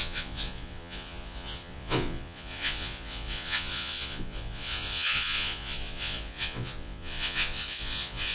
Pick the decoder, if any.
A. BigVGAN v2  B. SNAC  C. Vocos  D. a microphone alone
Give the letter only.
C